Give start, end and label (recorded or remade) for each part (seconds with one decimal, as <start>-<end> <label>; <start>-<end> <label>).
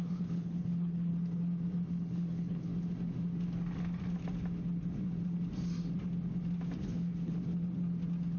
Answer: 0.0-1.1 remade; 1.1-1.9 recorded; 1.9-2.7 remade; 2.7-6.8 recorded; 6.8-7.5 remade; 7.5-8.4 recorded